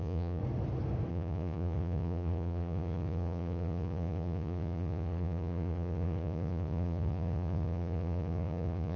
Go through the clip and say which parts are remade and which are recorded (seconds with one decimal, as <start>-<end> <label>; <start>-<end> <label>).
0.0-0.4 remade; 0.4-1.1 recorded; 1.1-9.0 remade